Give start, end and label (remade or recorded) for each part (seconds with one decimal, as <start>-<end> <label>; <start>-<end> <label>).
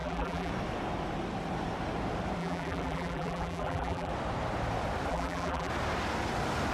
0.0-0.5 remade; 0.5-2.4 recorded; 2.4-4.1 remade; 4.1-5.1 recorded; 5.1-5.7 remade; 5.7-6.7 recorded